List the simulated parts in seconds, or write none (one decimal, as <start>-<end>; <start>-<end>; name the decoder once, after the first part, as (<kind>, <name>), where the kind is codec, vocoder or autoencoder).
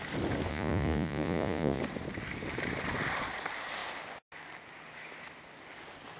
0.5-1.8 (vocoder, Vocos)